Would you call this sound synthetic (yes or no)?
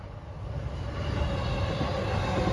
no